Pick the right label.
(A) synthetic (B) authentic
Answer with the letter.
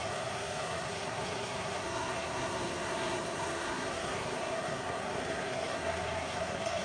A